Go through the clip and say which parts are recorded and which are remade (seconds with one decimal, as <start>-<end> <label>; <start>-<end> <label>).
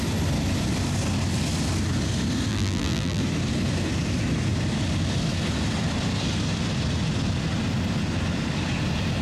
0.0-2.5 recorded; 2.5-3.2 remade; 3.2-9.2 recorded